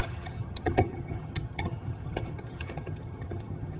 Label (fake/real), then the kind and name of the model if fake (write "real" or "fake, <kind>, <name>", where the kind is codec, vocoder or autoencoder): fake, vocoder, HiFi-GAN